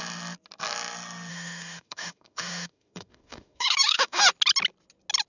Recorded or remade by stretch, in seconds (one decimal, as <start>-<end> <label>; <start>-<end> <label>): 0.0-1.3 recorded; 1.3-4.2 remade; 4.2-5.3 recorded